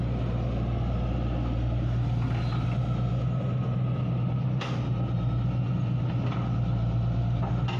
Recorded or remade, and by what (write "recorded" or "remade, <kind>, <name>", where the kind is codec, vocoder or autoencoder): recorded